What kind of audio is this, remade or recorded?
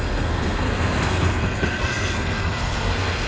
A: remade